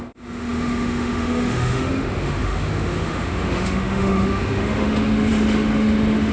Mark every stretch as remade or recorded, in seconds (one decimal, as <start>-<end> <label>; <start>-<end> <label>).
0.0-6.3 remade